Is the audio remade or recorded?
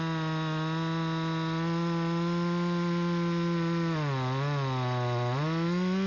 recorded